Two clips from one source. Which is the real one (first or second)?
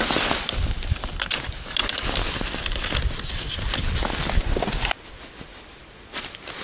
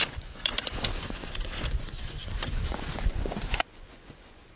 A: first